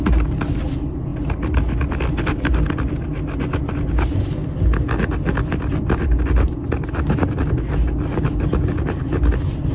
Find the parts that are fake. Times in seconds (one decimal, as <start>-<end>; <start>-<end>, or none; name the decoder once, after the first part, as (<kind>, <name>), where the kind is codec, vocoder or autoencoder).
none